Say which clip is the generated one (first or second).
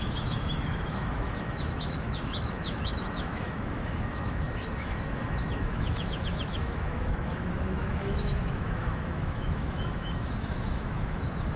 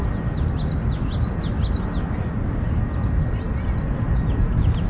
first